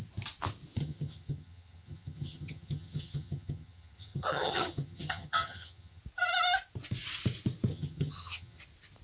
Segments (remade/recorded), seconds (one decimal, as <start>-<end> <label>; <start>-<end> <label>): 0.0-0.8 recorded; 0.8-6.0 remade; 6.0-7.7 recorded; 7.7-8.6 remade; 8.6-9.0 recorded